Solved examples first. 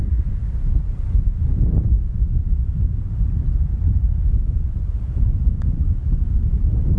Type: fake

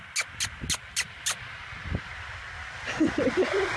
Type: real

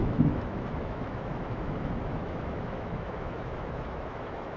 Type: fake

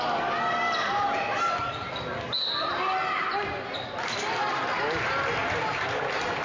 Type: real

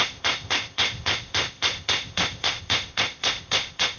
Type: fake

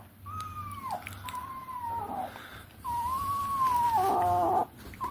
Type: real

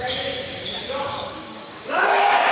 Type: fake